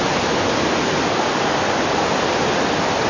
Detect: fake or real real